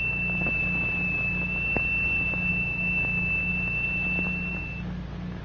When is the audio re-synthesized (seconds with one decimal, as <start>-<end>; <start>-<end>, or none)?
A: 2.5-3.5